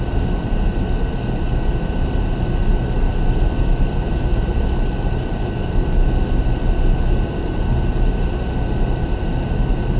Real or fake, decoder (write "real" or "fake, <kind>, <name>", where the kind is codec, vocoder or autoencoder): real